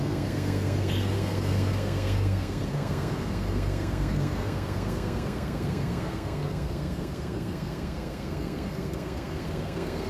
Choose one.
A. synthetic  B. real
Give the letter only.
A